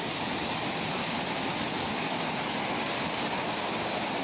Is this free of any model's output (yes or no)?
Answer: yes